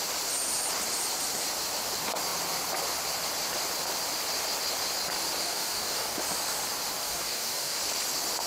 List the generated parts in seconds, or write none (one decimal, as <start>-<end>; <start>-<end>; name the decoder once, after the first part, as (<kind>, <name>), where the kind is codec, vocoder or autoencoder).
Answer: 5.4-6.2 (codec, DAC); 7.0-7.8